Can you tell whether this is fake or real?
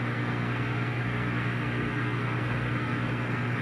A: fake